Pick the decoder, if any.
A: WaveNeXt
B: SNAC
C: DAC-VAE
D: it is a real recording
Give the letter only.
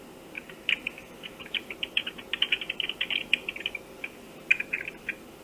D